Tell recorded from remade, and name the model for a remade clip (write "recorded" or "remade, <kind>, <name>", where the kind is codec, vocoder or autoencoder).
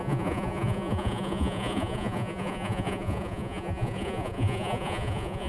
remade, vocoder, Vocos